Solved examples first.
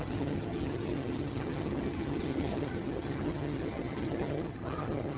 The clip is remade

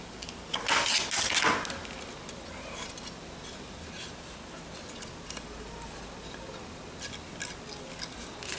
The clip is recorded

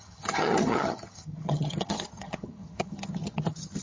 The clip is remade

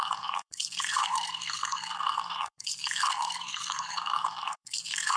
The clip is remade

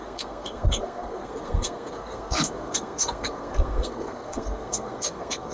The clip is remade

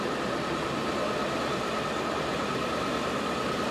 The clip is recorded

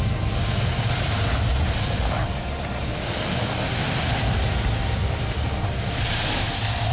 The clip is recorded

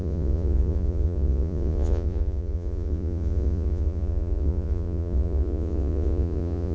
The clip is remade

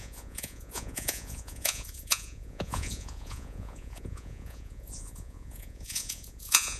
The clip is remade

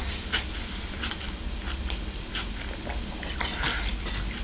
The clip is recorded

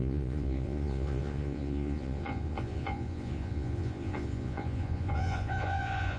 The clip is remade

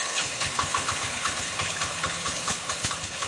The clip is remade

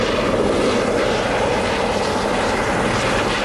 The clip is recorded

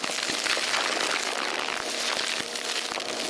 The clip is recorded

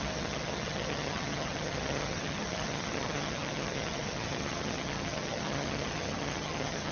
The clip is remade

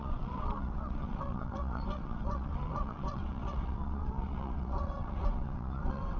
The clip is remade